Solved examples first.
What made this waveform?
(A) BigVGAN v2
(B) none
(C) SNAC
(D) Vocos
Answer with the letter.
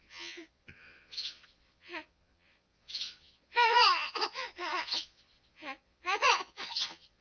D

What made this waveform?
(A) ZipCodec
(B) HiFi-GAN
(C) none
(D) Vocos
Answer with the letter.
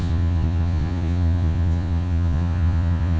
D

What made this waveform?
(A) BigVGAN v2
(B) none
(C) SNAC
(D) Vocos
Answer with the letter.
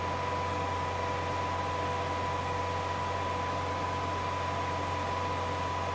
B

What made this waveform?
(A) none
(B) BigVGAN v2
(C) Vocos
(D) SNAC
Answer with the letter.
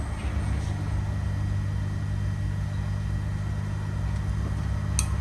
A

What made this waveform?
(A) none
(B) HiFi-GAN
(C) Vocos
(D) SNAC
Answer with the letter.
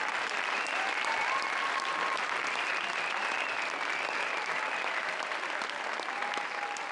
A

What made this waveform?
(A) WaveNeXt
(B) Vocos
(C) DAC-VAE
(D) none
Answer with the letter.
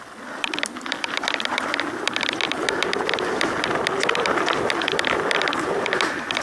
D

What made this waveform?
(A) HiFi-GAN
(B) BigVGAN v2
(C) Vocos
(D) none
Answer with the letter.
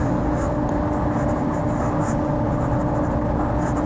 D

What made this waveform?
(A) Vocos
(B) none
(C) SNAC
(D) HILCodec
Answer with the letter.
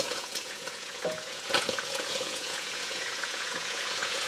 A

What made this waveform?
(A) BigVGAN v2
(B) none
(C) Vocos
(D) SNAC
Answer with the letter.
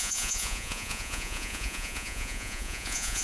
C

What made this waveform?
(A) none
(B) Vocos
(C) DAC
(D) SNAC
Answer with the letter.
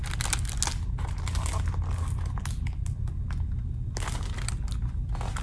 A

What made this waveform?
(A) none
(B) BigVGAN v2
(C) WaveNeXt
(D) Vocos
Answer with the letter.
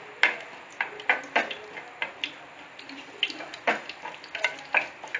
A